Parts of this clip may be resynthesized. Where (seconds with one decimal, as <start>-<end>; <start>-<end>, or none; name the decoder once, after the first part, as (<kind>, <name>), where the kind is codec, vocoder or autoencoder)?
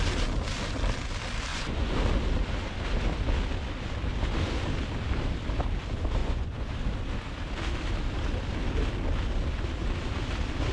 1.5-2.0 (vocoder, Vocos); 6.2-6.7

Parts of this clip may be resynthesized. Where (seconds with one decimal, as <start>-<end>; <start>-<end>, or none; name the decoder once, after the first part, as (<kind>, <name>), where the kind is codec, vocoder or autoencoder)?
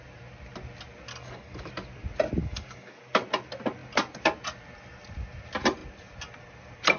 1.1-1.7 (codec, DAC); 2.4-3.0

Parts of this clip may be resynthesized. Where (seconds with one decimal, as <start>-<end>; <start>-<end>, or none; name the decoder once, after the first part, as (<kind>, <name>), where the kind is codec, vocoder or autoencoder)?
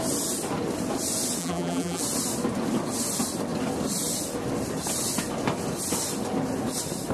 1.4-2.0 (vocoder, BigVGAN v2)